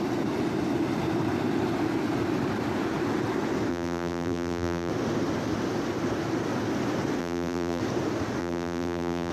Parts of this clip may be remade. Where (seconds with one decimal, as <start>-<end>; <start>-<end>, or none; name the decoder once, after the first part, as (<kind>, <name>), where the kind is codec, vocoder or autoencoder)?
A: 3.7-4.9 (vocoder, BigVGAN v2); 7.2-7.8; 8.4-9.3